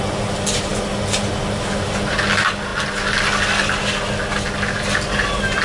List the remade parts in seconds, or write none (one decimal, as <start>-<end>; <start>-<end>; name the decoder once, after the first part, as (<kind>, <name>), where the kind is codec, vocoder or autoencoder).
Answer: none